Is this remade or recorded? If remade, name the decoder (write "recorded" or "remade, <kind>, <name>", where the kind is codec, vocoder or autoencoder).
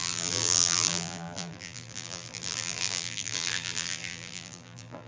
remade, vocoder, BigVGAN v2